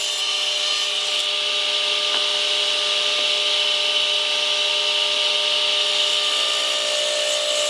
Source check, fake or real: real